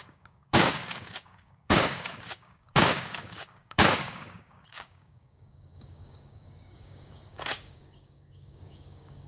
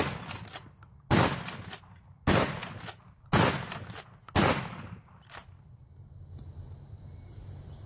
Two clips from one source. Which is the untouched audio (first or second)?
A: second